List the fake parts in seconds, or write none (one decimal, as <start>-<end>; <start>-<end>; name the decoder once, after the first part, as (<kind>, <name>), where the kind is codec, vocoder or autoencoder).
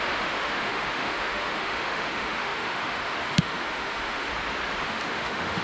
0.0-4.3 (autoencoder, DAC-VAE); 4.8-5.6